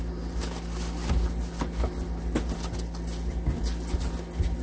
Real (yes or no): yes